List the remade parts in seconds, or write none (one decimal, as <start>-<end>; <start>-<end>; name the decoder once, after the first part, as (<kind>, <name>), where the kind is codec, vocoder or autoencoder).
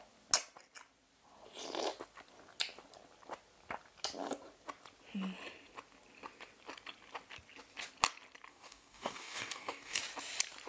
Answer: 8.5-10.0 (codec, DAC)